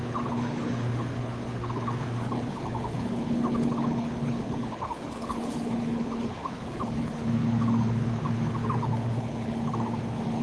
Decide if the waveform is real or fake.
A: fake